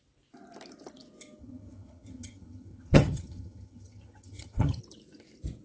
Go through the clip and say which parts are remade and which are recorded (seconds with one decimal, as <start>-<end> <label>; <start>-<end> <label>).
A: 0.0-1.4 recorded; 1.4-4.8 remade; 4.8-5.6 recorded